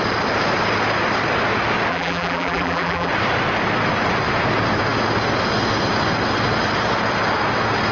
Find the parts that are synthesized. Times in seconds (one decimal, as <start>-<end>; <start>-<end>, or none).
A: 1.9-3.1